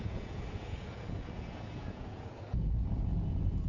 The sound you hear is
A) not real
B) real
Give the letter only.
A